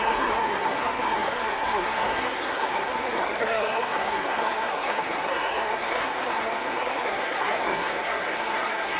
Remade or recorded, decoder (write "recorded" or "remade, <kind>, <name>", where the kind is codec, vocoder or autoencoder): remade, codec, SNAC